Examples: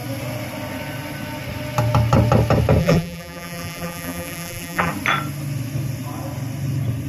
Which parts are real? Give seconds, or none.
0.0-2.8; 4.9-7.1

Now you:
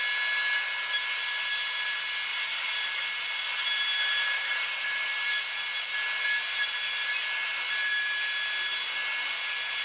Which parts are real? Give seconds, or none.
0.0-2.3; 2.9-3.9; 5.1-9.8

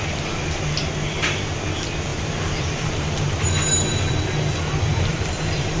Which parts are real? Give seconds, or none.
0.0-2.1; 3.4-4.9

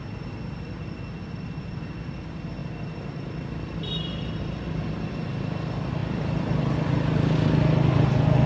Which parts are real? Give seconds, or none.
0.0-6.0; 6.6-8.5

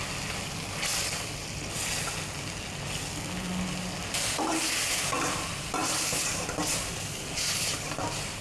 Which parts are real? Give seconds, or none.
0.0-8.4